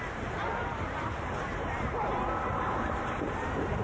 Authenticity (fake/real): real